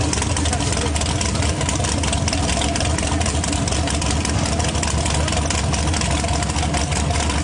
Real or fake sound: real